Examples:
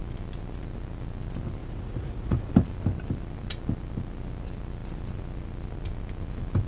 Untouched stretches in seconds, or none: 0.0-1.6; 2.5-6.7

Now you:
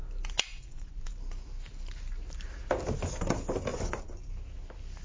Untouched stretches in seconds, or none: 0.0-0.5; 1.1-3.7; 4.3-5.0

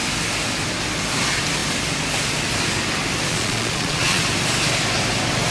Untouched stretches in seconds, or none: 0.0-3.3; 4.2-5.5

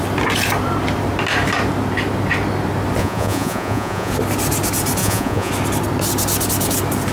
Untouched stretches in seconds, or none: 0.0-3.0; 4.1-5.0; 5.5-7.1